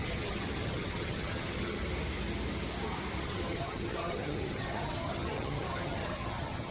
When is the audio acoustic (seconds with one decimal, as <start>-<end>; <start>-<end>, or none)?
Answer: 1.8-3.2